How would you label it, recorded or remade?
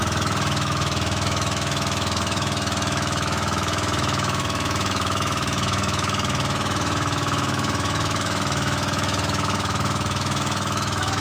remade